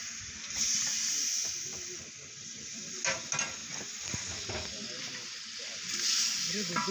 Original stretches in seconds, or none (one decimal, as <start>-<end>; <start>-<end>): 0.0-6.9